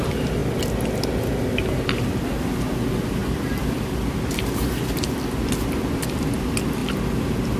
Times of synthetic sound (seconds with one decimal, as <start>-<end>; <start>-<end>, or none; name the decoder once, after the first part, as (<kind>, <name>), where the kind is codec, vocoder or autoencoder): 3.2-5.3 (vocoder, BigVGAN v2); 6.8-7.6